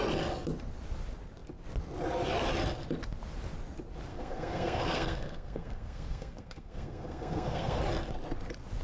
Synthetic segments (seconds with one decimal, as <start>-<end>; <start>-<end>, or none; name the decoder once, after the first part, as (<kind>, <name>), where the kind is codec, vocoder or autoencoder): 4.1-7.8 (codec, SNAC)